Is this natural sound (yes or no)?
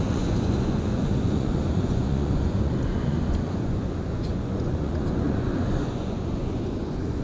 no